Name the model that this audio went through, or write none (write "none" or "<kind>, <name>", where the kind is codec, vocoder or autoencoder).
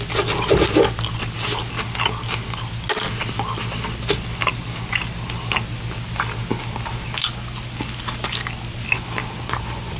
none